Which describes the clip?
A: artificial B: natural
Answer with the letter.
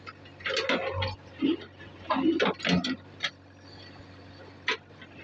B